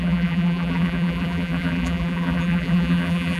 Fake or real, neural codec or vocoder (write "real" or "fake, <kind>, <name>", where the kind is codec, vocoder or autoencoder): fake, vocoder, BigVGAN v2